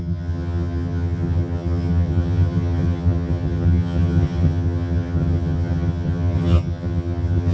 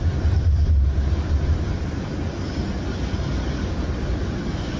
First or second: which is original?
second